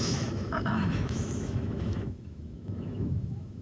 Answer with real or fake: fake